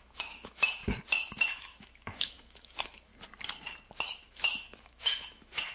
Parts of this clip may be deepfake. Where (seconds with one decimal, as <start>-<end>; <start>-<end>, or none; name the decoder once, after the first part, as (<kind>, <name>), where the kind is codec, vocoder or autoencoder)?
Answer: 0.0-0.8 (autoencoder, DAC-VAE); 1.4-3.1; 4.1-5.7